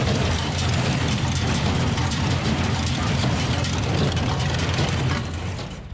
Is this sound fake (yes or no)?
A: yes